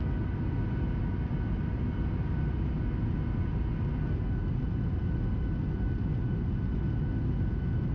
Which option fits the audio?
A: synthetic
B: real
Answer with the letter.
B